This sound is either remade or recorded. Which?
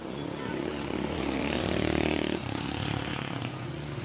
remade